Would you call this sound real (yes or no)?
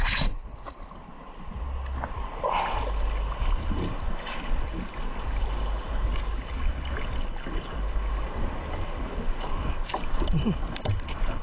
yes